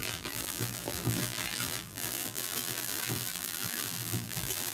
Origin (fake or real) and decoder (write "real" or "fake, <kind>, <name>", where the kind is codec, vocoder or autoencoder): fake, vocoder, BigVGAN v2